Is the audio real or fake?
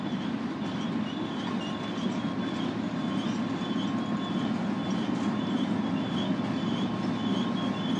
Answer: real